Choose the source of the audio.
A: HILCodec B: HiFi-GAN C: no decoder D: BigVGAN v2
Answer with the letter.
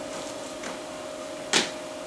C